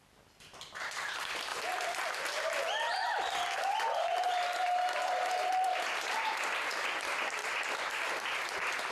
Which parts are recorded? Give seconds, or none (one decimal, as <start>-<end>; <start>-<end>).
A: 1.5-5.5; 7.4-8.9